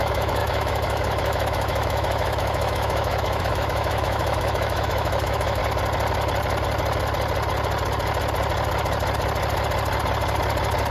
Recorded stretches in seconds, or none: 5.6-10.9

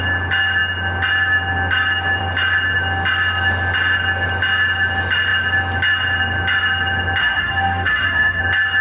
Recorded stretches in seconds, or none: 0.0-7.2; 8.4-8.8

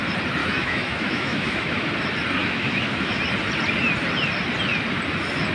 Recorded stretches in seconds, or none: 0.0-0.4; 1.9-2.4; 3.2-5.5

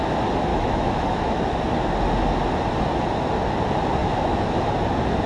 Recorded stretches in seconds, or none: 0.0-0.5; 1.4-4.0; 4.7-5.3

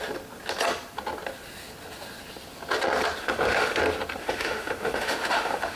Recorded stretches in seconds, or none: 0.0-3.2; 3.8-4.2